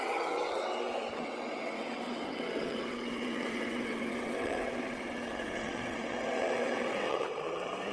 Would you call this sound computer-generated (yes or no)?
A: yes